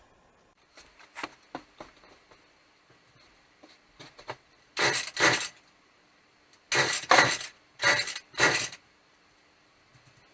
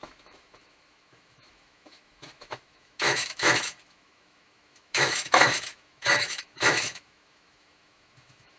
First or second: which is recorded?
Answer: first